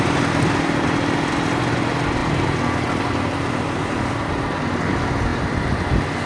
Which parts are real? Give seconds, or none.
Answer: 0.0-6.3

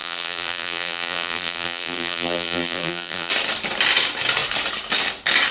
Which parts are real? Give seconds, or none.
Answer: 3.3-5.5

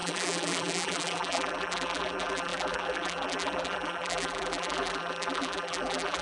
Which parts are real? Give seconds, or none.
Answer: none

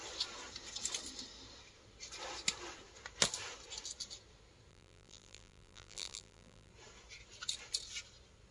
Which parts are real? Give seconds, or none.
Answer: 0.0-4.7; 6.7-8.5

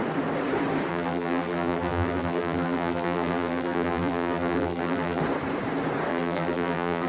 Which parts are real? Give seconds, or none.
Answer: 0.0-0.9; 5.2-6.1

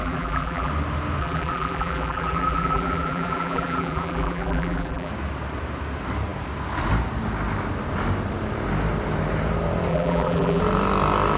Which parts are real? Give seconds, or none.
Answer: 0.7-1.2; 5.1-9.9; 10.6-11.4

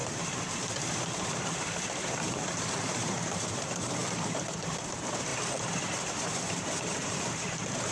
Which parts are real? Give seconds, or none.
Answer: none

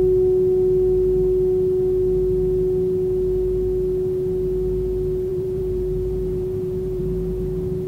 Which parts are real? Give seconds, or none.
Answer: 0.0-5.3; 7.0-7.9